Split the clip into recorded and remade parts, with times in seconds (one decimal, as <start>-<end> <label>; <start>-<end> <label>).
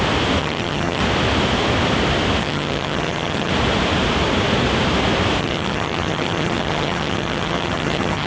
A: 0.0-0.4 recorded; 0.4-1.0 remade; 1.0-2.4 recorded; 2.4-3.5 remade; 3.5-5.4 recorded; 5.4-8.3 remade